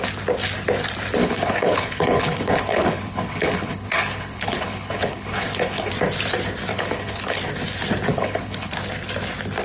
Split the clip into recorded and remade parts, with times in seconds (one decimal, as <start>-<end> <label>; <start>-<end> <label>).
0.0-1.2 recorded; 1.2-5.9 remade; 5.9-6.7 recorded; 6.7-7.4 remade; 7.4-8.1 recorded; 8.1-8.7 remade; 8.7-9.6 recorded